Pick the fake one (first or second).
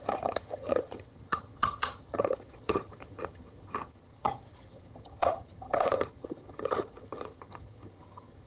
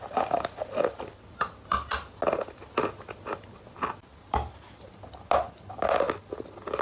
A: first